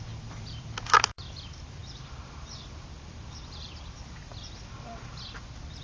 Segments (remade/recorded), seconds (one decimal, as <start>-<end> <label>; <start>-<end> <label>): 0.0-5.8 remade